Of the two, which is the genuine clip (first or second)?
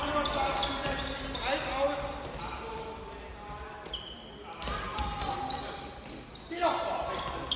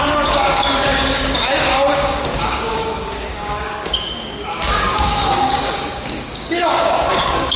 first